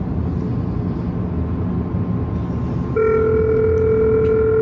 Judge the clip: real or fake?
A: real